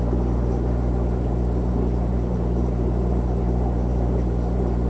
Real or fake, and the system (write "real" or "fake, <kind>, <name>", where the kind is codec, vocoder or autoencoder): fake, vocoder, BigVGAN v2